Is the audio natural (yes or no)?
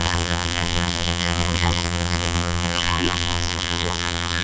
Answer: no